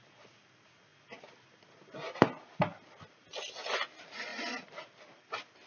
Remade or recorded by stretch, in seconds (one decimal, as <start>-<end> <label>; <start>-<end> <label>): 0.0-5.7 recorded